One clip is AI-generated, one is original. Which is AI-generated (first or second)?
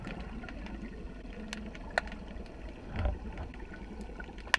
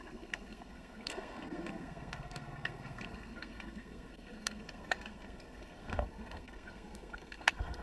second